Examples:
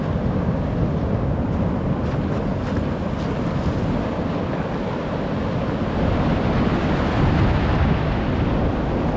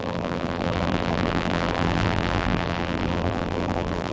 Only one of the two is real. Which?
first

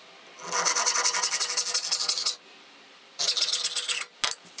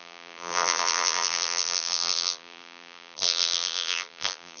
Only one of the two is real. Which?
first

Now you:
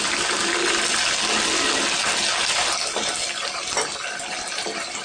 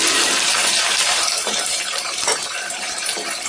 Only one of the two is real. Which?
first